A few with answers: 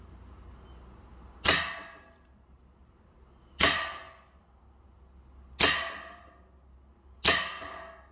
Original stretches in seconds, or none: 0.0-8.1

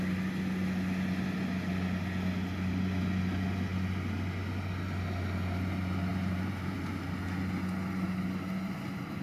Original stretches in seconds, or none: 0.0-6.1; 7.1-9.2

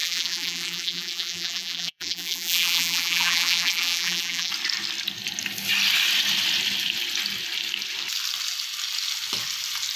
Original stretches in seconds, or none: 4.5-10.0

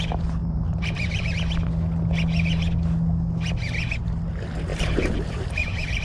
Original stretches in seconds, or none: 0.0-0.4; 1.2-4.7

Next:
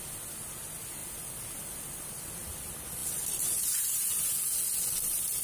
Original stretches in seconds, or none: 0.0-1.0; 2.3-3.0; 4.3-5.4